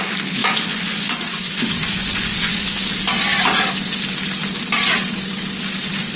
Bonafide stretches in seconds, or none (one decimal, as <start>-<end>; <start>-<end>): 0.0-0.4; 2.8-6.2